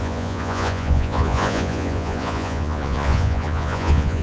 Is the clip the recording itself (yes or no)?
no